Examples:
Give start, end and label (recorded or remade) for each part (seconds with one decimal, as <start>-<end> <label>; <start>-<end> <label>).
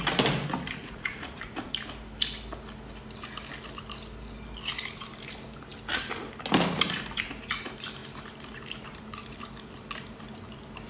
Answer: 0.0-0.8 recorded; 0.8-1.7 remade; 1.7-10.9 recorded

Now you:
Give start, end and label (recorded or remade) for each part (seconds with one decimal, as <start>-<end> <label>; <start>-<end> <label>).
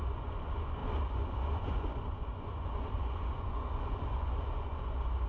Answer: 0.0-5.3 remade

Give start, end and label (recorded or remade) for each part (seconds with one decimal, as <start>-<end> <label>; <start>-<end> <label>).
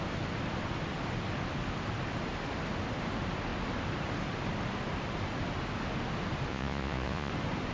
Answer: 0.0-6.5 recorded; 6.5-7.3 remade; 7.3-7.7 recorded